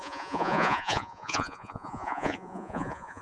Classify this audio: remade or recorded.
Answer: remade